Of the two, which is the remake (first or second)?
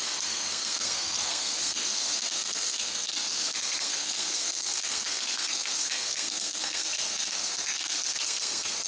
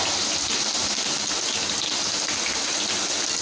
first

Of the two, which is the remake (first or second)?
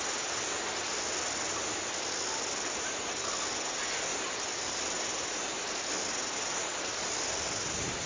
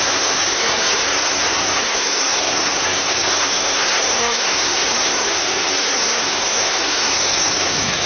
second